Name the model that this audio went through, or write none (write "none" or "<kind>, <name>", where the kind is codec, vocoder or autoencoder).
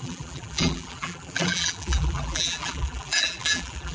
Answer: vocoder, BigVGAN v2